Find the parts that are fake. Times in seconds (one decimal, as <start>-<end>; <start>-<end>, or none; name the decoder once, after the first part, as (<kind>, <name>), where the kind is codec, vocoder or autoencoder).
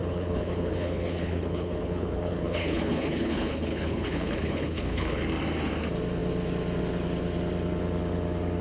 0.0-5.2 (codec, HILCodec)